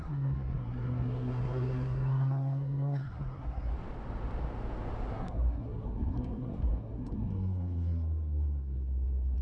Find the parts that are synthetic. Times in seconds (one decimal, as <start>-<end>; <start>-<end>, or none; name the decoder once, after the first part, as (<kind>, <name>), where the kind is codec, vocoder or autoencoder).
0.0-3.7 (codec, SNAC); 5.1-9.4